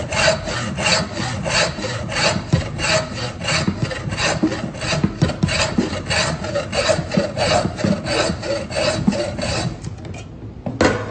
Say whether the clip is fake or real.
real